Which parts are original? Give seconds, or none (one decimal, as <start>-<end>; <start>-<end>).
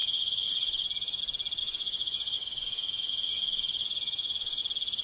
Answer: 1.2-1.6; 4.6-5.0